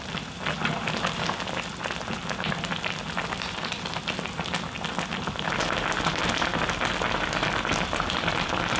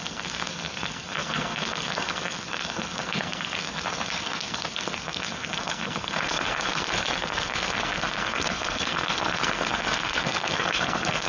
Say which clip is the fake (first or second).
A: second